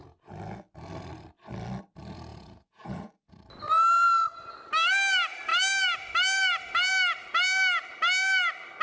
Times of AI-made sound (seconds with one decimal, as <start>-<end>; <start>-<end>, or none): 2.3-3.1